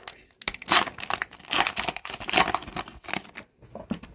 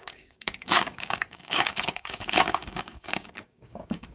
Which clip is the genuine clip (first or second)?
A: first